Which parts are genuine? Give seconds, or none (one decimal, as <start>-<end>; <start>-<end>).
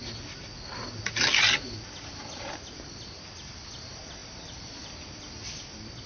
0.0-6.1